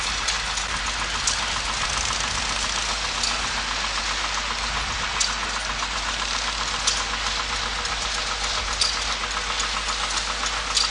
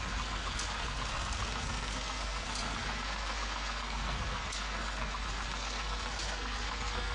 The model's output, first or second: second